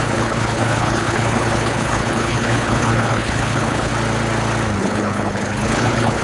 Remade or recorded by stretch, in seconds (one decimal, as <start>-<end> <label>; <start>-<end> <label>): 0.0-3.9 remade; 3.9-4.8 recorded; 4.8-6.2 remade